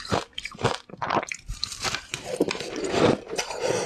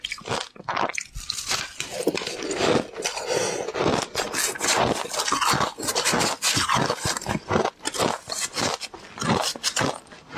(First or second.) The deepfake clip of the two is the first